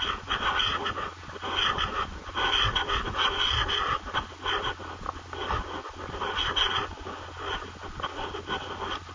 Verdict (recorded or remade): recorded